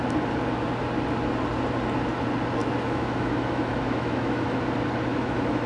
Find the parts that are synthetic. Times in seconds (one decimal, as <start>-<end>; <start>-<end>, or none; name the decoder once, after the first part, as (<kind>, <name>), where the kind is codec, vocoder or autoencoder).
2.6-4.6 (autoencoder, DAC-VAE); 5.1-5.7